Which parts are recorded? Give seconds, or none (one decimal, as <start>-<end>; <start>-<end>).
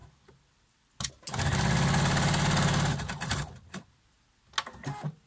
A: 0.0-5.3